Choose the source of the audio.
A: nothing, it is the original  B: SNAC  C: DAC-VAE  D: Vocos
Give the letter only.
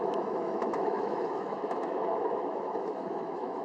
C